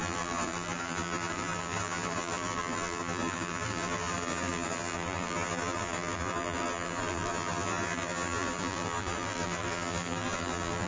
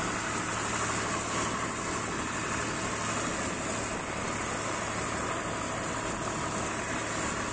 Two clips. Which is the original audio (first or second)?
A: second